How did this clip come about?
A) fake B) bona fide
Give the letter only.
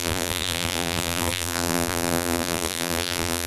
A